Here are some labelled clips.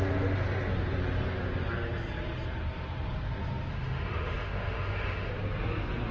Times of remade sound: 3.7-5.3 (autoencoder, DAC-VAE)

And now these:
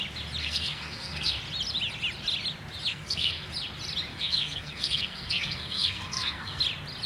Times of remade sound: 0.4-1.4 (codec, SNAC); 2.9-3.5; 4.1-6.6

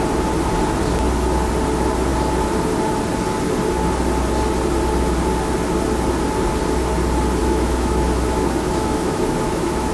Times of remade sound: 7.4-9.9 (autoencoder, DAC-VAE)

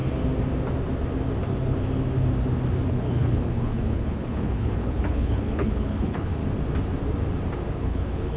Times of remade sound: 2.9-6.4 (codec, HILCodec); 7.7-8.4

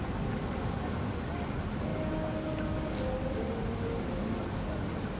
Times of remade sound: none

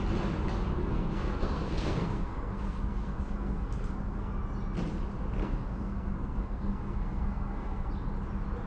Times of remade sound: 0.8-4.3 (codec, SNAC); 5.4-7.9

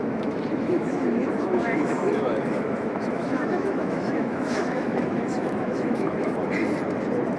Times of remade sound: 0.0-6.4 (autoencoder, DAC-VAE)

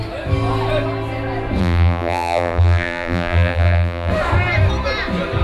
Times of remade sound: 1.6-4.1 (vocoder, BigVGAN v2)